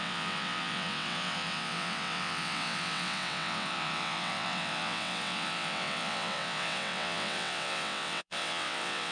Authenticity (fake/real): fake